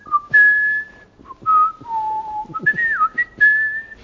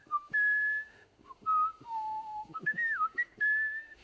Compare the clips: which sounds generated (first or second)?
second